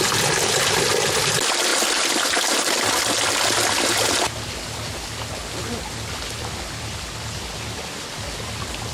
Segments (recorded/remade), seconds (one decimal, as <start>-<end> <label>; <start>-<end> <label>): 0.0-8.9 recorded